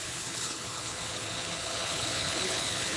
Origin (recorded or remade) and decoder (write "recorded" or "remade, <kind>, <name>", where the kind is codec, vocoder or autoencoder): remade, codec, HILCodec